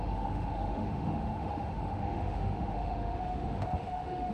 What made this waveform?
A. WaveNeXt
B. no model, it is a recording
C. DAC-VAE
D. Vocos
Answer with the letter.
C